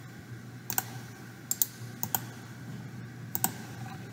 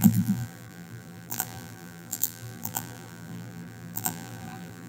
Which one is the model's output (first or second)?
second